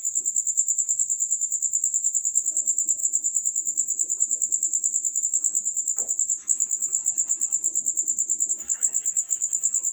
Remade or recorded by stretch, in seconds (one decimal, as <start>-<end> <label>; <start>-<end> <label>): 0.0-7.0 remade; 7.0-8.5 recorded; 8.5-9.9 remade